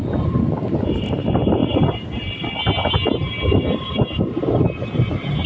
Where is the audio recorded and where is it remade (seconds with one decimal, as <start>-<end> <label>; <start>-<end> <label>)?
0.0-5.5 recorded